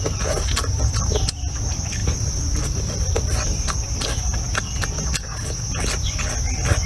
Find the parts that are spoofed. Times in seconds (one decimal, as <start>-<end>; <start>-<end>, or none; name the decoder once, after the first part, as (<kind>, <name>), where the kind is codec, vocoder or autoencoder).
2.0-4.2 (vocoder, BigVGAN v2)